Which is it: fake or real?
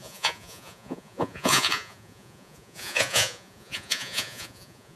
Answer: fake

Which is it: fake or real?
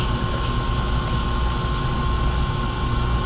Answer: real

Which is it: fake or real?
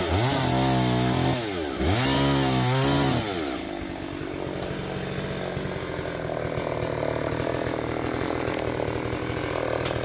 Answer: real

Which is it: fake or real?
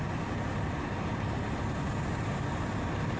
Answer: real